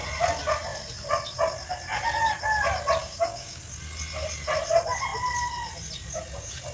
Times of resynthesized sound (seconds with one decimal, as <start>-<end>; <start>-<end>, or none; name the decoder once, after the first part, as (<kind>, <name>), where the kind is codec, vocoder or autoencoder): 3.0-3.6 (codec, DAC)